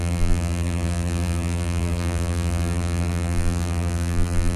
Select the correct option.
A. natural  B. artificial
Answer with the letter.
B